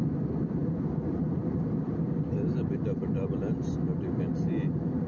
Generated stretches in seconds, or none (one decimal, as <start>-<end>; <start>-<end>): none